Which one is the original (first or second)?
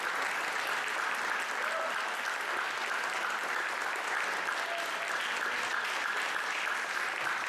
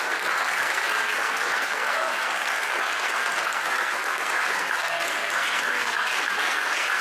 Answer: first